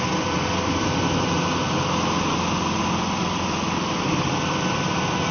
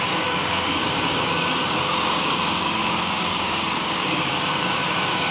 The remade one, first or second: second